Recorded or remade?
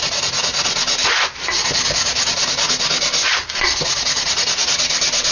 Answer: recorded